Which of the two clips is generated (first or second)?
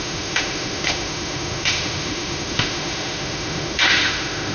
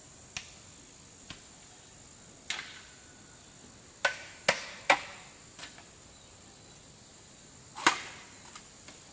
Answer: first